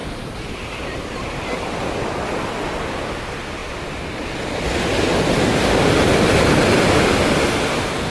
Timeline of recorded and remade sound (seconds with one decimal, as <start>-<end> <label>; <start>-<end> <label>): 0.0-8.1 recorded